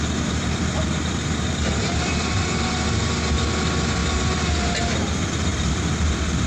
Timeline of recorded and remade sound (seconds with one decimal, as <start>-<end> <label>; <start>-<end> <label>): 0.0-1.6 recorded; 1.6-2.7 remade; 2.7-6.5 recorded